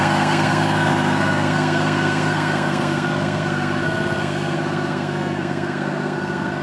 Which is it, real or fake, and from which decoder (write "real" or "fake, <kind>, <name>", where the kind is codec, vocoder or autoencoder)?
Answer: fake, codec, SNAC